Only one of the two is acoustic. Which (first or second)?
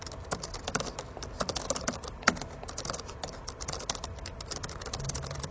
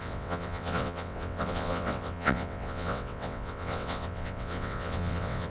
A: first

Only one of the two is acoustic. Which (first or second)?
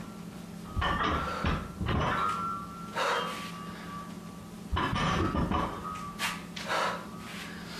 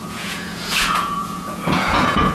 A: first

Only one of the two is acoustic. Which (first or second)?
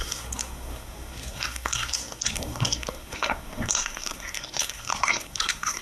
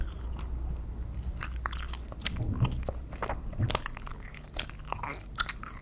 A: second